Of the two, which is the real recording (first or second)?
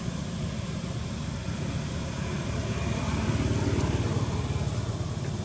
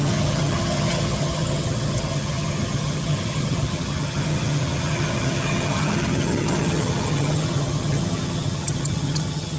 first